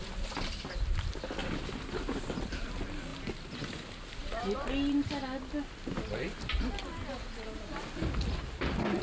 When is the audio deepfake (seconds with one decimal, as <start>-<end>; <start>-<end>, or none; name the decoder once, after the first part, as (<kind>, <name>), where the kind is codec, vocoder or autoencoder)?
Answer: 0.0-1.4 (vocoder, BigVGAN v2); 2.6-3.1; 3.7-4.2; 8.3-9.0